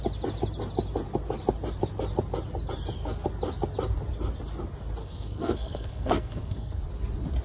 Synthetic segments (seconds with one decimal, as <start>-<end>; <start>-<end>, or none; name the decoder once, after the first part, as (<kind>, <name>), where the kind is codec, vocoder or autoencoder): 5.0-6.8 (codec, SNAC)